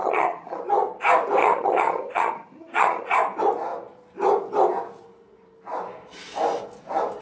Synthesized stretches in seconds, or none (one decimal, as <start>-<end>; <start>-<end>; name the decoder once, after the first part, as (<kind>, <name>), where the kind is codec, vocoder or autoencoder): 0.0-0.6 (vocoder, HiFi-GAN); 1.4-3.1